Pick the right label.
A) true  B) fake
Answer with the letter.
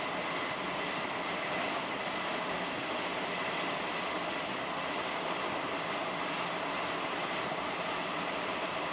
A